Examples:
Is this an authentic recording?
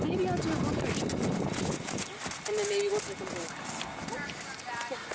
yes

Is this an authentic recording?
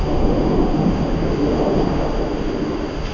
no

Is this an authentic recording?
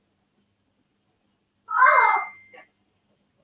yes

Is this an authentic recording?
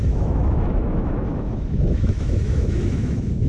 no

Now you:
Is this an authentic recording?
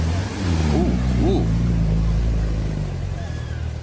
yes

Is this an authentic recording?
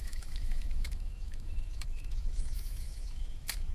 no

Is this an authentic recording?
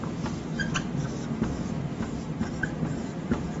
yes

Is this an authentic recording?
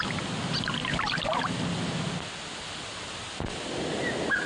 yes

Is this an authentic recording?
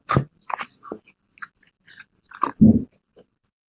yes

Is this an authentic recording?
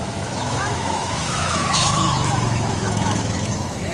no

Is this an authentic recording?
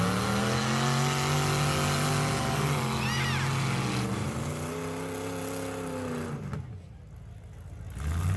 yes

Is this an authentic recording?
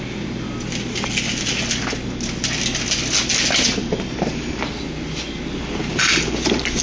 yes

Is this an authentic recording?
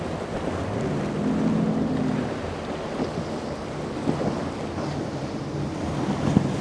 yes